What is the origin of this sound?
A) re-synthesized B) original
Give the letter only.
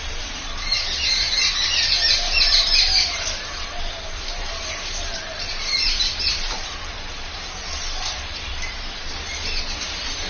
A